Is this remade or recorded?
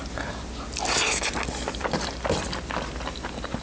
recorded